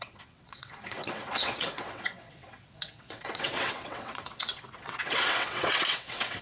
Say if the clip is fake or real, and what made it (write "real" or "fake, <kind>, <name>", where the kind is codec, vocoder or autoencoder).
fake, vocoder, WaveNeXt